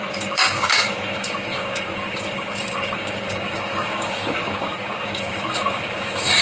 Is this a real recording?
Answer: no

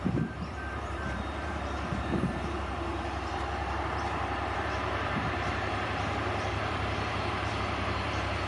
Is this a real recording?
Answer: no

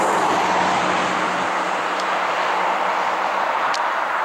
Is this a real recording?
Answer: yes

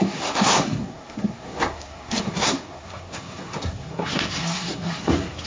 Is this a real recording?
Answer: no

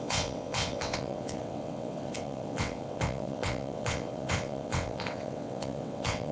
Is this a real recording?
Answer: no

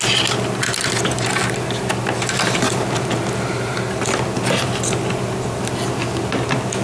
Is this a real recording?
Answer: yes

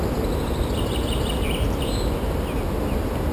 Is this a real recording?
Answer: yes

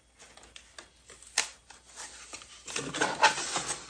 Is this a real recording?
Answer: yes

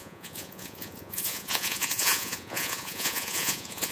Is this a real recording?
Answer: no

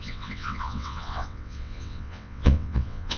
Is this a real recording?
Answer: no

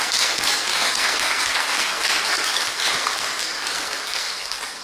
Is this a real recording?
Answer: no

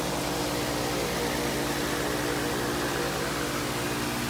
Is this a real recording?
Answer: yes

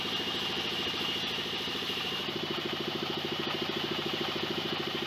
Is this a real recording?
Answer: no